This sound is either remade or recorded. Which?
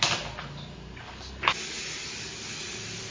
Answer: recorded